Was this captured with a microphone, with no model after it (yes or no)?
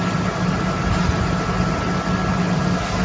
yes